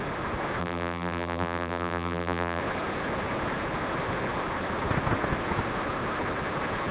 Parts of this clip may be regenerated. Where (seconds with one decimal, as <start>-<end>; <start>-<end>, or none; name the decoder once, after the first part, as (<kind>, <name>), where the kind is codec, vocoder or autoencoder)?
0.6-2.6 (vocoder, BigVGAN v2)